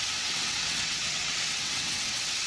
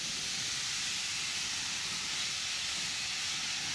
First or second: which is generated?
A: first